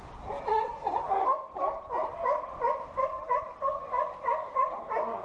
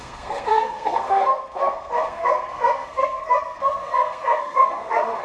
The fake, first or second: second